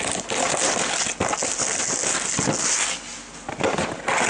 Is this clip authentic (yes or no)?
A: yes